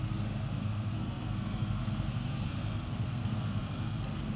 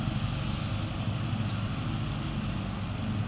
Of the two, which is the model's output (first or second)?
first